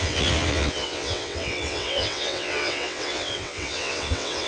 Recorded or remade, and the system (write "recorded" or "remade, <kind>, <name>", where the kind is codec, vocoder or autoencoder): remade, vocoder, WaveNeXt